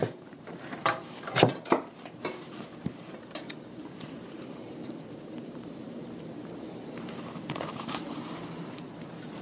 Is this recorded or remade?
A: remade